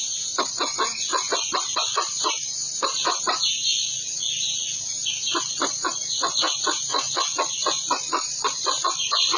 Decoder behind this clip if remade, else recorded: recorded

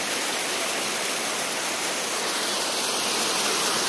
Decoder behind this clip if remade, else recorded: recorded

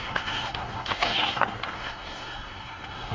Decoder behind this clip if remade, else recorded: remade, codec, SNAC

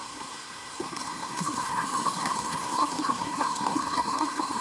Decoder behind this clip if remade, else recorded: remade, codec, SNAC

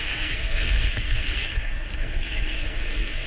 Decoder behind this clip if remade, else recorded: remade, codec, SNAC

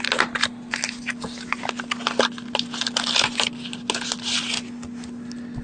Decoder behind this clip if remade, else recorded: recorded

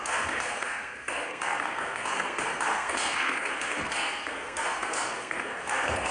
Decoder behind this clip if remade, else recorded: remade, codec, SNAC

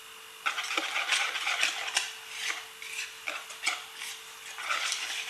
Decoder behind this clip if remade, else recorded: recorded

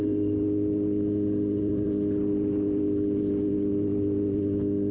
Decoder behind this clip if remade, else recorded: recorded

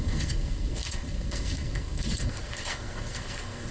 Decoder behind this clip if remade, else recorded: remade, codec, SNAC